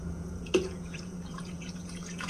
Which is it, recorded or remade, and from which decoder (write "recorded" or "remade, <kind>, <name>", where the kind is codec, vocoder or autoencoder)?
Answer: remade, vocoder, Vocos